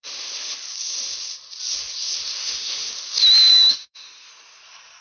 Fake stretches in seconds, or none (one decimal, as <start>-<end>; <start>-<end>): 2.4-2.9; 3.5-4.3